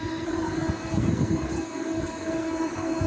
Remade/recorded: remade